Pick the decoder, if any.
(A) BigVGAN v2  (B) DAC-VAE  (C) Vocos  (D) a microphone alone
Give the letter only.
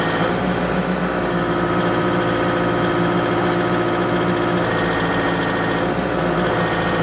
D